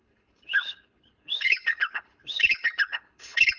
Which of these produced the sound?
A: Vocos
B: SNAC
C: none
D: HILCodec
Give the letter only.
D